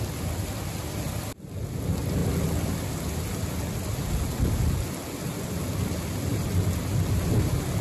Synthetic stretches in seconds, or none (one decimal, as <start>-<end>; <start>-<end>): none